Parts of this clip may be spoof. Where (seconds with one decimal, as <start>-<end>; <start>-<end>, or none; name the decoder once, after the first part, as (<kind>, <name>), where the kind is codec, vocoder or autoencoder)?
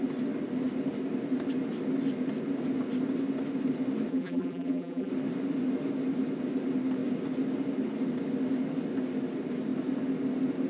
4.1-5.1 (vocoder, BigVGAN v2)